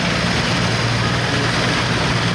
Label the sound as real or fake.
real